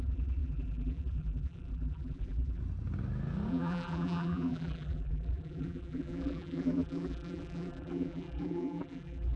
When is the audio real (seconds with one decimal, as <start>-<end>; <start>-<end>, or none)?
2.6-3.5